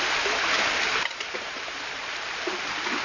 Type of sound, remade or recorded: recorded